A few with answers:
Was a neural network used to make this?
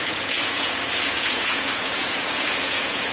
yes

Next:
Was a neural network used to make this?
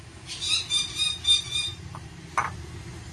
yes